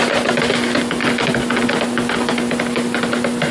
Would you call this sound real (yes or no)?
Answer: yes